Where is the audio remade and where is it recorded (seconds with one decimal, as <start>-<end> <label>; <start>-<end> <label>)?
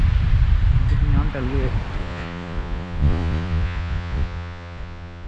0.0-2.0 recorded; 2.0-5.3 remade